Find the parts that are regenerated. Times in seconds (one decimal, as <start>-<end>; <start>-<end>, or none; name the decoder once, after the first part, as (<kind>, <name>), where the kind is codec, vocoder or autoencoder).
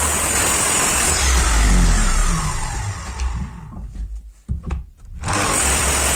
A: none